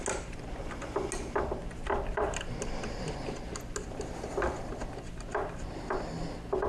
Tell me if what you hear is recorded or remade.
recorded